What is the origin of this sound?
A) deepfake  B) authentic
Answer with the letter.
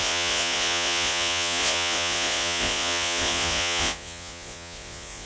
A